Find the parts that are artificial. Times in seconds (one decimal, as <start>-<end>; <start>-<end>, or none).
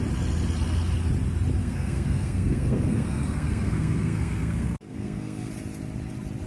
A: 1.6-5.5